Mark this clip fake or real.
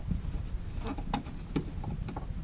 real